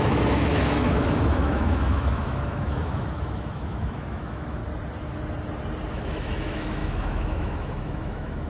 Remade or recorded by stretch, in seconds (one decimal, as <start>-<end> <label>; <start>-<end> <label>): 0.0-4.6 remade; 4.6-5.9 recorded; 5.9-8.5 remade